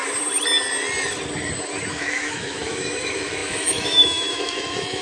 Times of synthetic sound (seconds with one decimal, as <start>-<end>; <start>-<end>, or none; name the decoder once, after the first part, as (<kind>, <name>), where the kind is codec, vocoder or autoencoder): 1.9-5.0 (autoencoder, DAC-VAE)

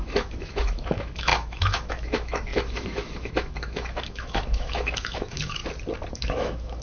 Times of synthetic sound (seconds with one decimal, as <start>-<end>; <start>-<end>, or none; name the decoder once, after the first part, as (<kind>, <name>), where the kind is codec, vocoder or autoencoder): 0.0-5.6 (autoencoder, DAC-VAE); 6.1-6.8

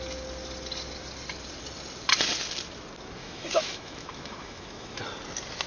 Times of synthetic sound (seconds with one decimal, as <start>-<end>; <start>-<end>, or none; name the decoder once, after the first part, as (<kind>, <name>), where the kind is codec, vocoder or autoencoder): 3.2-5.0 (autoencoder, DAC-VAE)

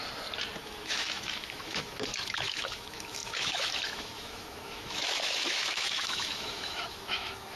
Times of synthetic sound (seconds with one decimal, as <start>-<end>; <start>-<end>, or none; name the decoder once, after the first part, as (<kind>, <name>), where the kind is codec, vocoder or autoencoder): 0.6-7.6 (autoencoder, DAC-VAE)

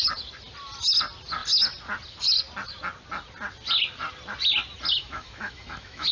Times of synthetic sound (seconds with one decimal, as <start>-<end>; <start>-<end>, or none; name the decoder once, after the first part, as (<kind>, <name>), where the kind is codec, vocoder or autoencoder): 5.0-6.1 (autoencoder, DAC-VAE)

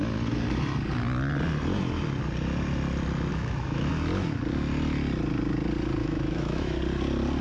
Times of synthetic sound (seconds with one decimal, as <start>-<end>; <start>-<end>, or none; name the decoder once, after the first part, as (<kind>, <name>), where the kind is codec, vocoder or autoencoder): 3.3-3.9 (autoencoder, DAC-VAE); 6.0-6.8

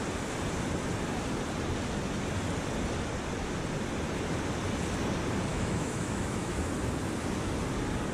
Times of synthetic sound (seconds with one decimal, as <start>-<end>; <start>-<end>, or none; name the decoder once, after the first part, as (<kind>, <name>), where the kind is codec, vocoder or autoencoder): 5.5-6.5 (autoencoder, DAC-VAE)

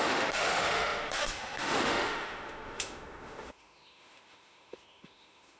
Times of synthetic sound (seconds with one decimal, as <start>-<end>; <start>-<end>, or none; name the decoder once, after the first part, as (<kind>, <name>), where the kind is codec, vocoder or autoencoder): 0.0-5.6 (autoencoder, DAC-VAE)